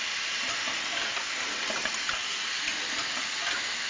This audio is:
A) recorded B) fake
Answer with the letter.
A